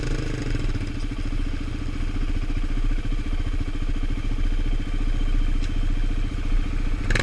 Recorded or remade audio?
recorded